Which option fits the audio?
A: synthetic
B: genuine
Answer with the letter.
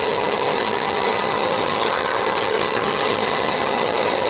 A